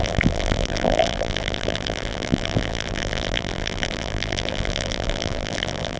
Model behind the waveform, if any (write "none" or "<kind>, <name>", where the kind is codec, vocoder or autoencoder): vocoder, BigVGAN v2